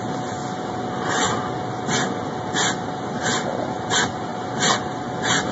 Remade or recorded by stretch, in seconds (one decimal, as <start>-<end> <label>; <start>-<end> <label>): 0.0-5.5 recorded

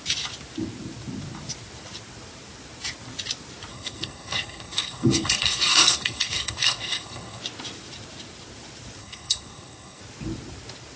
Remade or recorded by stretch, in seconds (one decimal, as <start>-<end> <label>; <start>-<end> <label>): 0.0-3.7 recorded; 3.7-7.4 remade; 7.4-9.0 recorded; 9.0-10.0 remade; 10.0-11.0 recorded

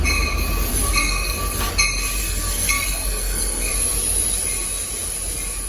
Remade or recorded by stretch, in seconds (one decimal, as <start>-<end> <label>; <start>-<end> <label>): 0.0-0.7 recorded; 0.7-1.7 remade; 1.7-2.2 recorded; 2.2-3.7 remade; 3.7-5.7 recorded

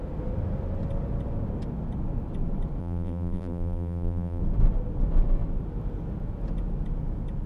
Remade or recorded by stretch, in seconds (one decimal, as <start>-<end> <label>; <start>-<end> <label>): 0.0-2.8 recorded; 2.8-4.4 remade; 4.4-7.5 recorded

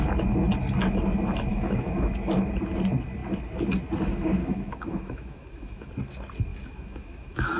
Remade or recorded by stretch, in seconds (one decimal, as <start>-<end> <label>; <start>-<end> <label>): 0.0-1.5 recorded; 1.5-2.1 remade; 2.1-4.4 recorded; 4.4-5.9 remade; 5.9-6.5 recorded; 6.5-7.6 remade

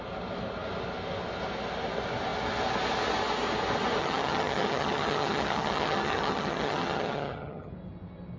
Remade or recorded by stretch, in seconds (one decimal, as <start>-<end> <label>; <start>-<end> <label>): 0.0-4.0 recorded; 4.0-7.7 remade; 7.7-8.4 recorded

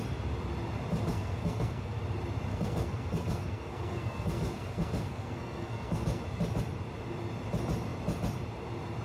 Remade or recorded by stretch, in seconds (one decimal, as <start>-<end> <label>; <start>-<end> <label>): 0.0-1.1 recorded; 1.1-2.0 remade; 2.0-2.5 recorded; 2.5-6.2 remade; 6.2-9.0 recorded